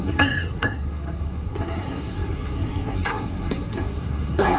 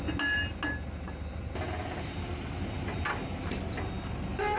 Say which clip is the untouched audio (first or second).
second